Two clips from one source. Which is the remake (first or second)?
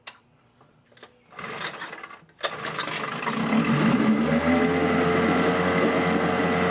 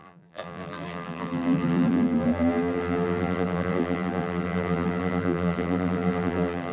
second